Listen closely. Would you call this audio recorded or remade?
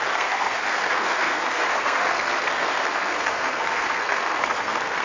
remade